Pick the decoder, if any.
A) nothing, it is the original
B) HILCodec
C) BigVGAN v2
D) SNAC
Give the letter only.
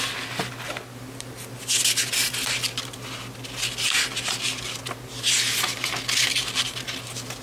A